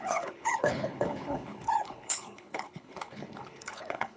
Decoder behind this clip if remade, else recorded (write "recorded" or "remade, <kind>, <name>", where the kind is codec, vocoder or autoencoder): remade, codec, HILCodec